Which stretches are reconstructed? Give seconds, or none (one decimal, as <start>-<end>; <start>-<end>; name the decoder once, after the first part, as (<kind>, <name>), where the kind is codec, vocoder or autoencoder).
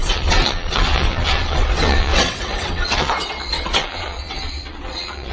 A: 0.0-5.3 (vocoder, WaveNeXt)